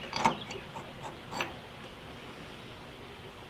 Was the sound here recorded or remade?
recorded